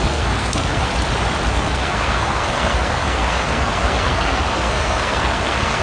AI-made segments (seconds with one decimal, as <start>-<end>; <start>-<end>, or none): 0.0-0.9; 1.5-5.8